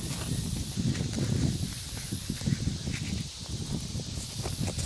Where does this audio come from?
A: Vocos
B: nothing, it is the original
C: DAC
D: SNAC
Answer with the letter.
B